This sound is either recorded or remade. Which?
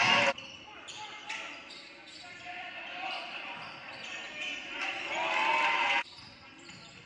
recorded